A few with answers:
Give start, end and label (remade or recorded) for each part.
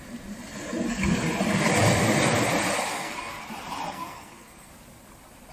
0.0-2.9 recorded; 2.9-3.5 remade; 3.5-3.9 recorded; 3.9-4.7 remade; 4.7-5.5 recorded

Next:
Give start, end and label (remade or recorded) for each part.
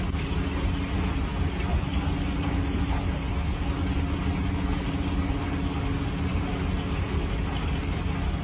0.0-8.4 recorded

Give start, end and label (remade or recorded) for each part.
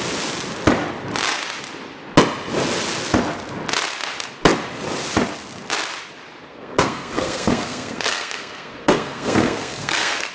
0.0-6.5 recorded; 6.5-10.3 remade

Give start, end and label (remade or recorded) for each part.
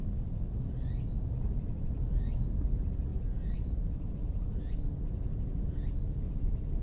0.0-6.8 recorded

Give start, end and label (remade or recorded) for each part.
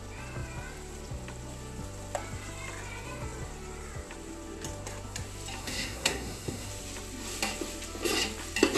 0.0-5.6 recorded; 5.6-6.7 remade; 6.7-8.8 recorded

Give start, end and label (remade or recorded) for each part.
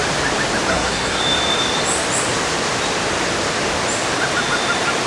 0.0-0.7 recorded; 0.7-1.2 remade; 1.2-5.1 recorded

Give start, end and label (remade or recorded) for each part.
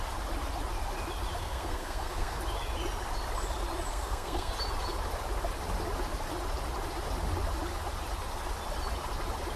0.0-1.4 recorded; 1.4-2.4 remade; 2.4-3.9 recorded; 3.9-4.5 remade; 4.5-9.6 recorded